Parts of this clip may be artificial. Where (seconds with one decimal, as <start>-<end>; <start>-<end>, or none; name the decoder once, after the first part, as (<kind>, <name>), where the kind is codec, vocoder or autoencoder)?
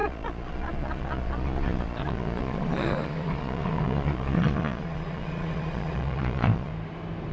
0.0-6.7 (vocoder, Vocos)